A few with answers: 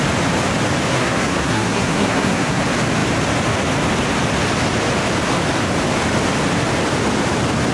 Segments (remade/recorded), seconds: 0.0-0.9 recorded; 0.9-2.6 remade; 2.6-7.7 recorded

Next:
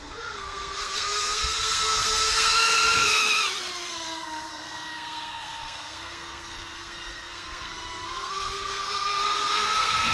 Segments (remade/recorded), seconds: 0.0-3.2 remade; 3.2-3.9 recorded; 3.9-10.1 remade

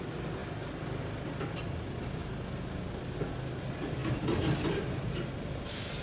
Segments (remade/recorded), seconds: 0.0-6.0 recorded

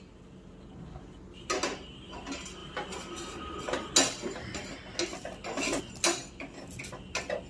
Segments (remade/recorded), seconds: 0.0-7.5 recorded

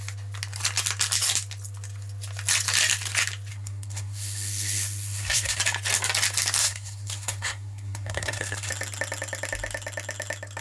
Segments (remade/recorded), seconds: 0.0-3.5 recorded; 3.5-5.6 remade; 5.6-6.6 recorded; 6.6-8.7 remade; 8.7-10.6 recorded

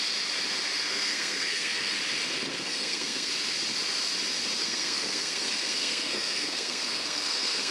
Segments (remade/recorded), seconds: 0.0-0.9 recorded; 0.9-1.9 remade; 1.9-2.5 recorded; 2.5-3.3 remade; 3.3-4.6 recorded; 4.6-7.7 remade

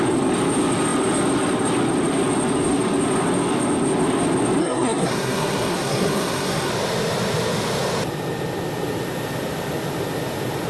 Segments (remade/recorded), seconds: 0.0-4.6 recorded; 4.6-6.7 remade; 6.7-10.7 recorded

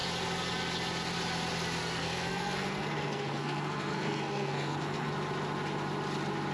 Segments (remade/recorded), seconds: 0.0-1.8 recorded; 1.8-5.1 remade; 5.1-6.5 recorded